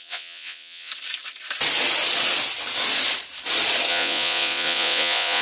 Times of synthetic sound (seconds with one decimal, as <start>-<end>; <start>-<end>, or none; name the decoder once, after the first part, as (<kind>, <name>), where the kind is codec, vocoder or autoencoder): 0.0-0.9 (vocoder, Vocos); 3.9-5.4

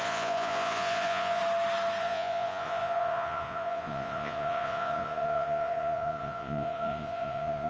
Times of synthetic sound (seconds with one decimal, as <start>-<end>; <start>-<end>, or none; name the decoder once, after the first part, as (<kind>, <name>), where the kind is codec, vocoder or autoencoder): 0.0-1.4 (vocoder, Vocos); 2.0-7.7

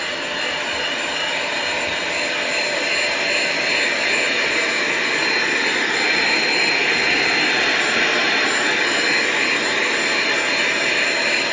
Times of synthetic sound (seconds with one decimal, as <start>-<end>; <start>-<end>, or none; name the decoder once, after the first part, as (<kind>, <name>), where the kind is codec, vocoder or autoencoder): none

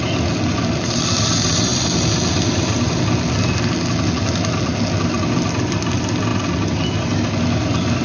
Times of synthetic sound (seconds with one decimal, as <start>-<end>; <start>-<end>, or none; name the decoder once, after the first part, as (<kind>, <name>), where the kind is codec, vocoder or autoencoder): none

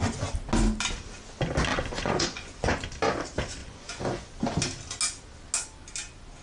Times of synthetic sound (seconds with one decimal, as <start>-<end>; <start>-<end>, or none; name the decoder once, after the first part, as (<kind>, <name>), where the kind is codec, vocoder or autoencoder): 1.7-2.9 (vocoder, Vocos); 3.6-4.3

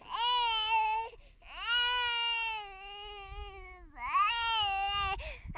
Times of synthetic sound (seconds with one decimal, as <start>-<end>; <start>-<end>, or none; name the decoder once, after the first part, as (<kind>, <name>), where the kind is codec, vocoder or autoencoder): none

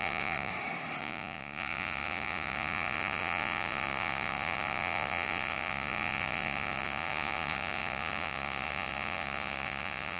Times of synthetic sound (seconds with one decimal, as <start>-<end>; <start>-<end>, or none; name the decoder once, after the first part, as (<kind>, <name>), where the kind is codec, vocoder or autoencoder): 0.0-0.5 (vocoder, Vocos); 1.0-10.2